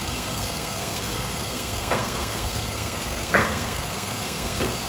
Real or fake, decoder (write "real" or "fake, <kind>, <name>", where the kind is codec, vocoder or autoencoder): fake, codec, SNAC